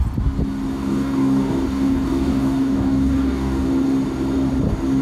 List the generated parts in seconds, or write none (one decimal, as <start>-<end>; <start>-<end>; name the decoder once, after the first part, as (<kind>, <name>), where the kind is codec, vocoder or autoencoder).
0.7-3.7 (codec, DAC)